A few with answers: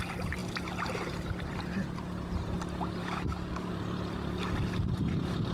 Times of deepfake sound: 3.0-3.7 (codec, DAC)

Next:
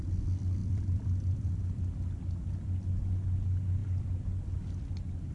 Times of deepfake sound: 0.6-1.6 (vocoder, BigVGAN v2)

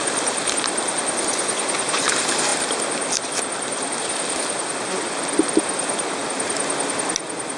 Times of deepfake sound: 1.3-2.0 (vocoder, Vocos)

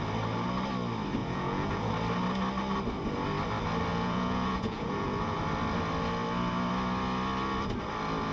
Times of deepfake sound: 1.2-1.9 (vocoder, Vocos); 3.9-5.4